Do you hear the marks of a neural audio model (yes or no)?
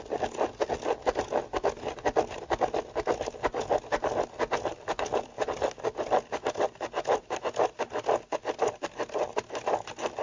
no